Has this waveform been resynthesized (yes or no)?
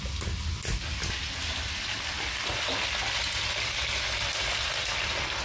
no